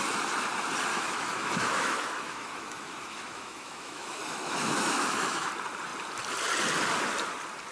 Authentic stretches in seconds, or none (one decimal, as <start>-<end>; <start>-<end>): 0.0-0.9; 5.5-7.7